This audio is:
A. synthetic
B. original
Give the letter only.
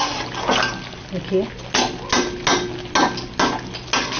B